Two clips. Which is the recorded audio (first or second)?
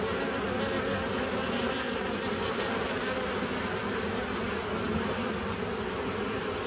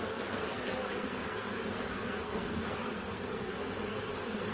first